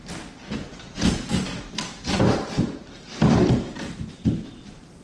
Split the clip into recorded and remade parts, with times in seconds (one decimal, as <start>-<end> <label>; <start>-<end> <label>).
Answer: 0.0-1.7 recorded; 1.7-5.0 remade